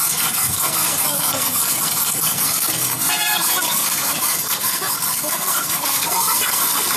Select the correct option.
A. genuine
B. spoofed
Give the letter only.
B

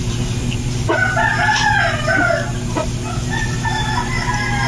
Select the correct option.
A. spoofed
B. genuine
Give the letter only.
B